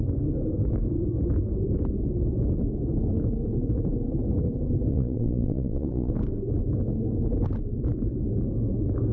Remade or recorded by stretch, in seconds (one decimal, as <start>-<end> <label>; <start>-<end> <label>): 0.0-4.9 recorded; 4.9-6.1 remade; 6.1-9.1 recorded